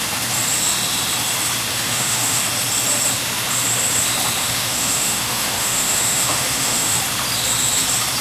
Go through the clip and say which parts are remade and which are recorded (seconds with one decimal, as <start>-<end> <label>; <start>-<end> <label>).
0.0-1.7 recorded; 1.7-2.4 remade; 2.4-4.4 recorded; 4.4-7.0 remade; 7.0-8.2 recorded